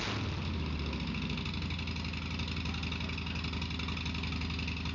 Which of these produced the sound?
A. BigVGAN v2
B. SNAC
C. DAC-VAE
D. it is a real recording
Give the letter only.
D